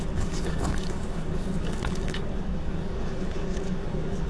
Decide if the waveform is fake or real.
fake